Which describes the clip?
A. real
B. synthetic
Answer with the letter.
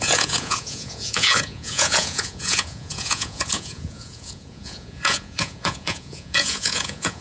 B